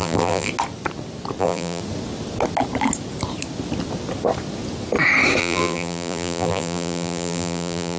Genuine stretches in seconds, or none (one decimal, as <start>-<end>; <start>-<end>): 0.5-1.4; 1.8-5.4